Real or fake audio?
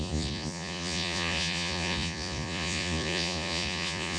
fake